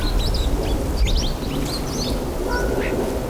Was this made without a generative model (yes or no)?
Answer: yes